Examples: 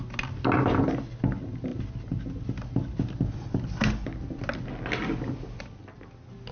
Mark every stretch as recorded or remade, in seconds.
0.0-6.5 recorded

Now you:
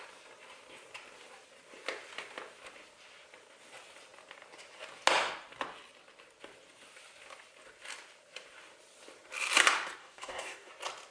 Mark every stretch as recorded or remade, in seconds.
0.0-10.0 recorded; 10.0-10.7 remade; 10.7-11.1 recorded

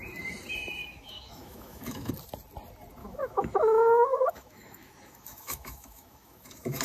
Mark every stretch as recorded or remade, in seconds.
0.0-0.8 recorded; 0.8-2.1 remade; 2.1-3.0 recorded; 3.0-6.8 remade

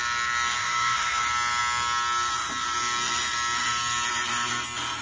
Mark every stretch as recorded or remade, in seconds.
0.0-0.6 recorded; 0.6-1.2 remade; 1.2-5.0 recorded